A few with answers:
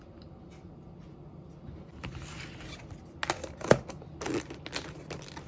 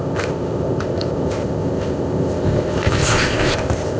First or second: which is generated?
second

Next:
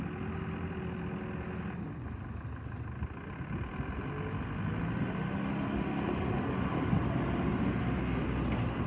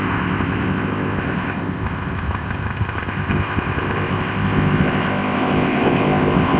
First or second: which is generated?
second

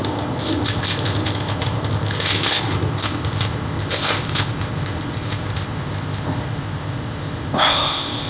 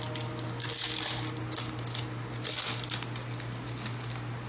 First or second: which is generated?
first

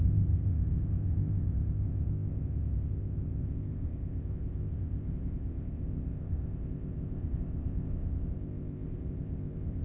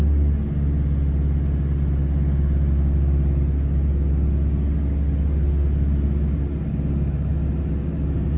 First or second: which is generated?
first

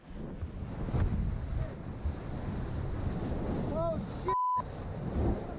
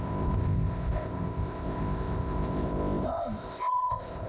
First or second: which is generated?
second